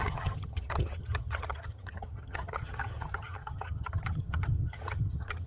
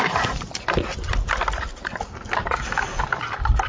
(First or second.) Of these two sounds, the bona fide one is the second